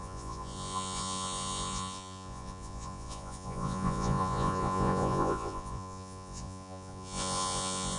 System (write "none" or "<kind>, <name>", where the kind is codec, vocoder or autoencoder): vocoder, Vocos